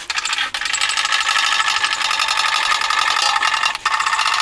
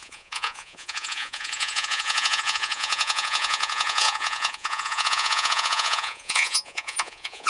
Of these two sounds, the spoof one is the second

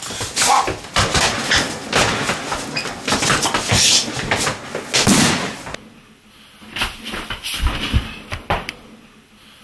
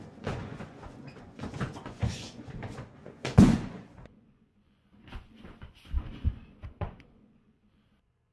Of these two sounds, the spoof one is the second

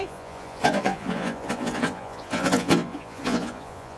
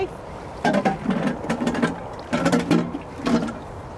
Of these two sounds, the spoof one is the first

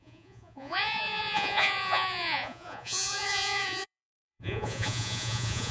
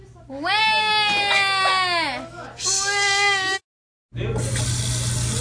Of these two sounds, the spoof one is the first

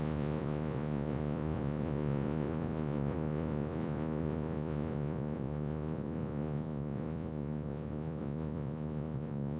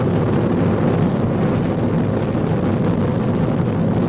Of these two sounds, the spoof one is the first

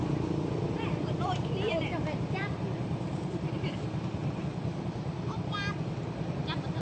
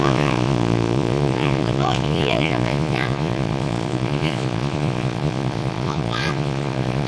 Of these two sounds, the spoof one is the second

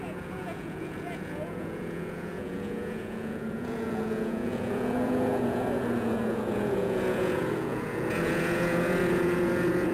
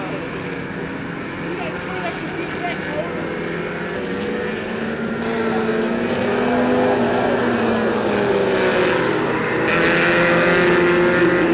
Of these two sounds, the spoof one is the first